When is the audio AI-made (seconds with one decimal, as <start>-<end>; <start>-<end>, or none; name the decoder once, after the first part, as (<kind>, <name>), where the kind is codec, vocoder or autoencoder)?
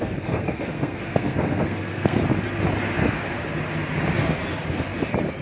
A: 0.0-2.2 (codec, SNAC)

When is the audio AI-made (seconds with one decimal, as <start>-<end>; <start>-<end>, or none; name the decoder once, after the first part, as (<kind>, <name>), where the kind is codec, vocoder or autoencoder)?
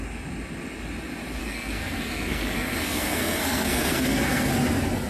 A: 1.4-4.5 (codec, SNAC)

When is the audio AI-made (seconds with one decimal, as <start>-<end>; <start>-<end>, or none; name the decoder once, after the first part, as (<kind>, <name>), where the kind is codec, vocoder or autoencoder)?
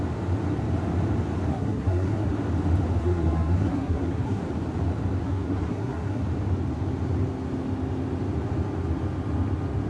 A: 1.5-2.3 (codec, SNAC); 3.0-4.4; 5.2-6.2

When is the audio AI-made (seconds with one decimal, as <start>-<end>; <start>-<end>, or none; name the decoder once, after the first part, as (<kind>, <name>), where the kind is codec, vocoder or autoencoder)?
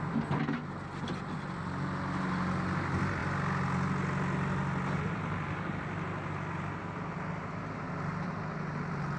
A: none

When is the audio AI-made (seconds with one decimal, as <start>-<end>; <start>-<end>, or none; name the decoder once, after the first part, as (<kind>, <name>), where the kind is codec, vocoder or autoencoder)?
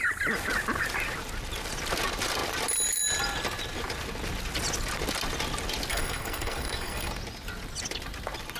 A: 5.9-7.1 (codec, SNAC)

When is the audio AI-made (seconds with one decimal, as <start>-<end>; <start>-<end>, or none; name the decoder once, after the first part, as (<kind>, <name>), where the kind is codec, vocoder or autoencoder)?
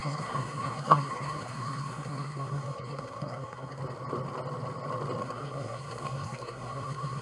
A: 0.0-3.8 (codec, SNAC); 5.2-7.2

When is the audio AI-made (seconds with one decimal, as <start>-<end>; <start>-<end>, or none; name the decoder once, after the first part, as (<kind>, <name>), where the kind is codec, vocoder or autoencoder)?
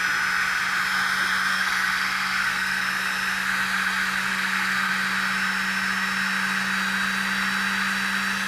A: 1.5-2.9 (codec, SNAC); 4.3-4.9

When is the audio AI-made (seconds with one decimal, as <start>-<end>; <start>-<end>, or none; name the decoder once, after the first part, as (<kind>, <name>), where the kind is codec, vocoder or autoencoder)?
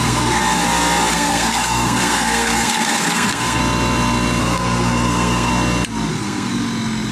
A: 0.0-0.4 (codec, SNAC); 1.1-3.6; 4.4-5.5; 6.1-6.5